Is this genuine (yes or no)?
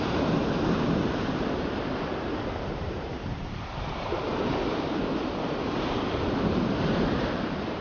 no